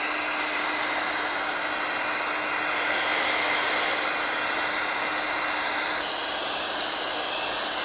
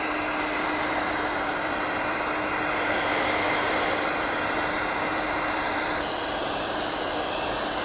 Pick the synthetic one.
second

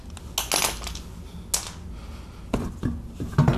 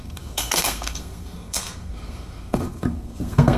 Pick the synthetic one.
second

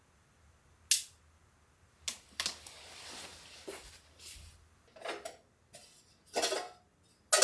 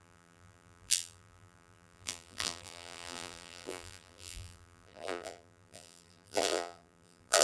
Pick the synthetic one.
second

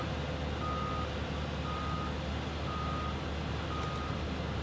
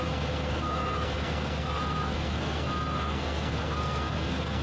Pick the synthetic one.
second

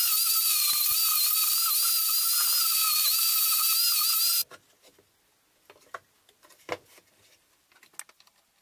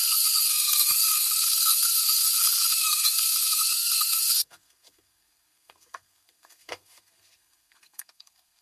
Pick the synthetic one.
second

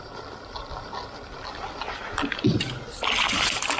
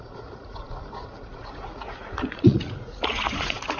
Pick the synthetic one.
second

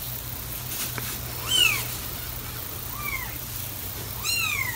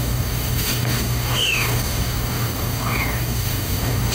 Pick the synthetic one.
second